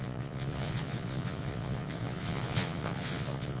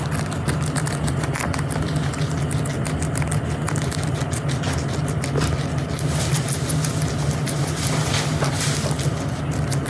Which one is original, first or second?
second